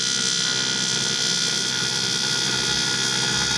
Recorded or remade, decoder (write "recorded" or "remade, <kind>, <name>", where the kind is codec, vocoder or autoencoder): recorded